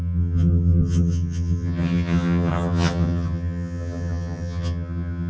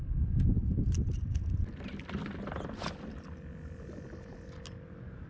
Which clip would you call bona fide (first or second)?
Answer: second